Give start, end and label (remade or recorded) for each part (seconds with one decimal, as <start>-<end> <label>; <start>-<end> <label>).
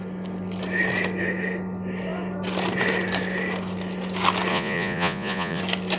0.0-4.5 recorded; 4.5-5.6 remade; 5.6-6.0 recorded